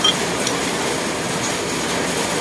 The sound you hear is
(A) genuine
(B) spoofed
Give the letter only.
A